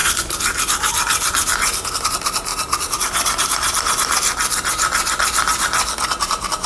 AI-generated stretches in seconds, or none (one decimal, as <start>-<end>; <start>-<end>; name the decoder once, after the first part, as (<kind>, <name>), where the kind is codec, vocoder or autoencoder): none